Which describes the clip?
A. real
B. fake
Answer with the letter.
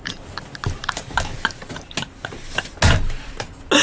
A